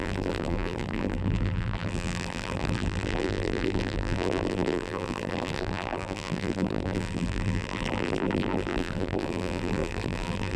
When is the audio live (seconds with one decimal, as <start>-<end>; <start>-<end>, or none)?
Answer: none